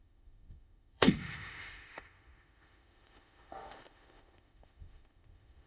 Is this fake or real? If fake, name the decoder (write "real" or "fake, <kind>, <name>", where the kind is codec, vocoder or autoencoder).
fake, autoencoder, DAC-VAE